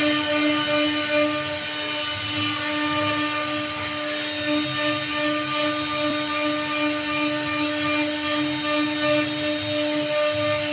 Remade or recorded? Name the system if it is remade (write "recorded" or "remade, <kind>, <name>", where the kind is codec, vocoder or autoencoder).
recorded